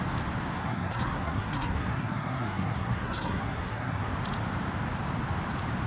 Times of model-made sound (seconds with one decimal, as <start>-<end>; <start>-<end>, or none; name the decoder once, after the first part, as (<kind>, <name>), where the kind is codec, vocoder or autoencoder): 0.6-4.1 (codec, SNAC)

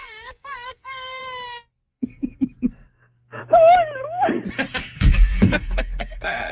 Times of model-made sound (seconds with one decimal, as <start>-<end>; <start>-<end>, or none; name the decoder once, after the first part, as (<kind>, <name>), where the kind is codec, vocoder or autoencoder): 0.0-1.2 (codec, SNAC); 1.9-3.4; 4.8-6.5

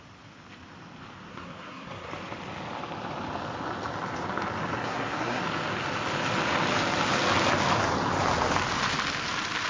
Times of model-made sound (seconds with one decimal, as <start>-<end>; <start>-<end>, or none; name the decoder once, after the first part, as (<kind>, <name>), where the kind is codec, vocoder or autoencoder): 1.3-2.1 (codec, SNAC); 4.8-5.4

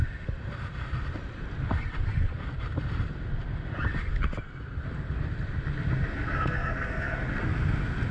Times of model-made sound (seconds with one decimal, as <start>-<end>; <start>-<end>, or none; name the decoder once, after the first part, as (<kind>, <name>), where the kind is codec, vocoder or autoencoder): 6.1-7.4 (codec, SNAC)

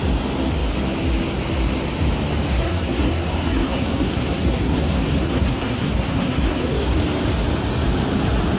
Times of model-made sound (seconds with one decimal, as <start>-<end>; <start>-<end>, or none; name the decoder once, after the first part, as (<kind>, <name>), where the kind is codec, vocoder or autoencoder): 2.5-7.0 (codec, SNAC)